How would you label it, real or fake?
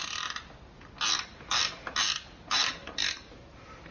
real